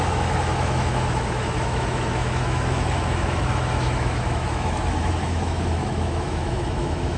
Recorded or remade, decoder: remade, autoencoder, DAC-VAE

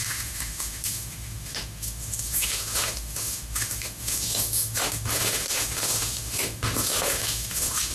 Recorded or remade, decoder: remade, autoencoder, DAC-VAE